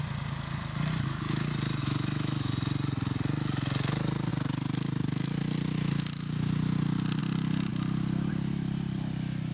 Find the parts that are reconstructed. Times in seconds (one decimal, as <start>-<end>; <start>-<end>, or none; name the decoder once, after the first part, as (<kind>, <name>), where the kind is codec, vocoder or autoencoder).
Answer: 1.8-2.5 (autoencoder, DAC-VAE)

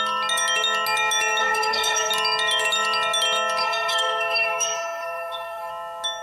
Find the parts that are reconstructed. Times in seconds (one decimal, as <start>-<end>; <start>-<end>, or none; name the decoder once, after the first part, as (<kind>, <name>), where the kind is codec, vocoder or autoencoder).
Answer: 1.4-2.1 (codec, SNAC); 3.6-5.7

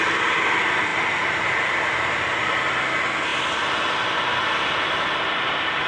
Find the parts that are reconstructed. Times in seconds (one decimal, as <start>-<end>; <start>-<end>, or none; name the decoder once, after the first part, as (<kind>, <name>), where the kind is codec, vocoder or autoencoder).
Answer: none

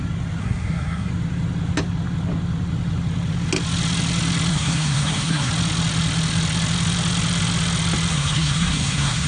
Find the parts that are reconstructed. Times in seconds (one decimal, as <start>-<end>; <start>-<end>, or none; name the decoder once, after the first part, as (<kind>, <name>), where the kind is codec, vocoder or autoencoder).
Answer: 0.4-1.1 (codec, SNAC); 4.5-5.5; 8.1-9.3

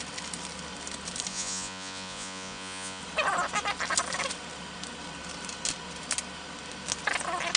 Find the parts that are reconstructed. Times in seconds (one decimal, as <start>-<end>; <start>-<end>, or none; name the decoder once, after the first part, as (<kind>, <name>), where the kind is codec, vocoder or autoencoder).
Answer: 1.3-3.0 (vocoder, Vocos)